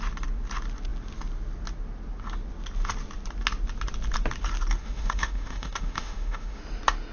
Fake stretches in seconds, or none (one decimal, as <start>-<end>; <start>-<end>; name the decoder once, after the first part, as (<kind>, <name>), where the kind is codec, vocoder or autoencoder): 4.8-6.6 (autoencoder, DAC-VAE)

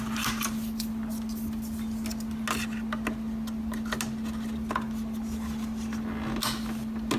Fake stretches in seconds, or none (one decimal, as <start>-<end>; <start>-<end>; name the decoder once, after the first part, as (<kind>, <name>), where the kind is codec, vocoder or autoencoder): none

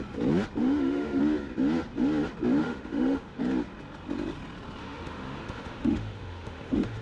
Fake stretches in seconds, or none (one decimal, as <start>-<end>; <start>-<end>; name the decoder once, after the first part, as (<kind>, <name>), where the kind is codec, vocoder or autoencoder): 0.6-1.2 (autoencoder, DAC-VAE); 2.6-3.4; 4.8-7.0

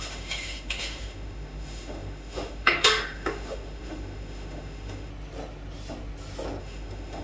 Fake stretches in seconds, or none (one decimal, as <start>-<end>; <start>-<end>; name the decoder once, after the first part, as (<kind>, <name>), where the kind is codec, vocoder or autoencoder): 0.0-5.1 (autoencoder, DAC-VAE); 6.6-7.2